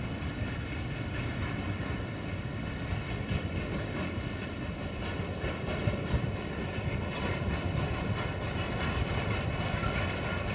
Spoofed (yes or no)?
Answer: no